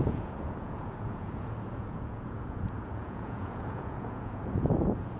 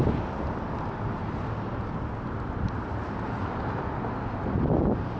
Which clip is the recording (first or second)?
second